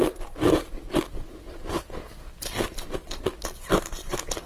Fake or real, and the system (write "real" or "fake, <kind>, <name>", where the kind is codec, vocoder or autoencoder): real